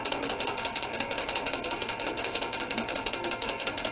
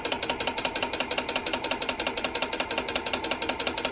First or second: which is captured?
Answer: second